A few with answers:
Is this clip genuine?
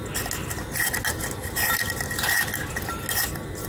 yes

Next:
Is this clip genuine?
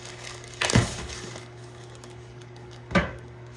no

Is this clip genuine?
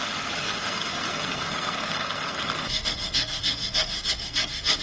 no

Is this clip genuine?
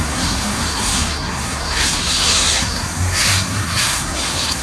no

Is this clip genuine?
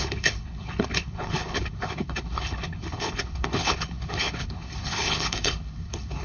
no